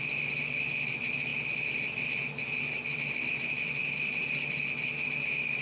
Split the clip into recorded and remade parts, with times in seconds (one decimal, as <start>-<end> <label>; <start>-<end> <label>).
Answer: 0.0-5.6 recorded